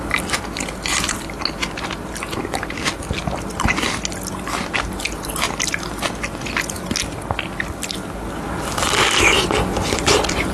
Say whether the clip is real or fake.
real